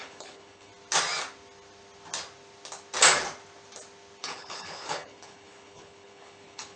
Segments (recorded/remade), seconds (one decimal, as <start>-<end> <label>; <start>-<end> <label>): 0.0-0.7 remade; 0.7-4.2 recorded; 4.2-6.8 remade